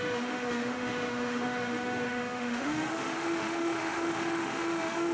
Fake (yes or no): yes